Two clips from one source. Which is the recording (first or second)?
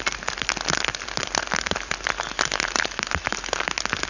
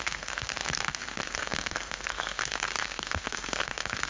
first